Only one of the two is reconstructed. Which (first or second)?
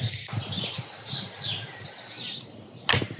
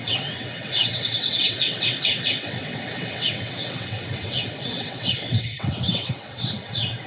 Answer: second